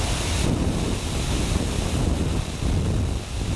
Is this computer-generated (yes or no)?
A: no